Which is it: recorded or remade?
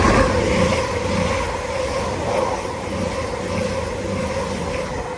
recorded